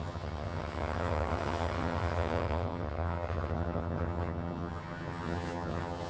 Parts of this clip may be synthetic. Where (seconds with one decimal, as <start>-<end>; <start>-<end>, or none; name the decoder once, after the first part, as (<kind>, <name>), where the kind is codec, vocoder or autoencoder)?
0.0-6.1 (vocoder, HiFi-GAN)